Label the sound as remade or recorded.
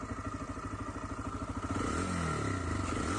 recorded